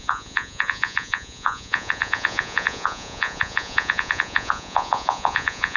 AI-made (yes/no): yes